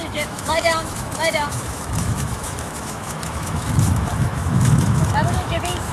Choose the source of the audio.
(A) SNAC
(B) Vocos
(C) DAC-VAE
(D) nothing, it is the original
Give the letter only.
C